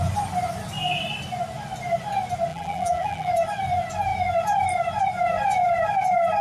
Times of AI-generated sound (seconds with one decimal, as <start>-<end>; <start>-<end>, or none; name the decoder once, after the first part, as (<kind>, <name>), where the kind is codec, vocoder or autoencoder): 2.5-3.3 (vocoder, BigVGAN v2)